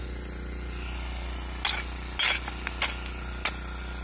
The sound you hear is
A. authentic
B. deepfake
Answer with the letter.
A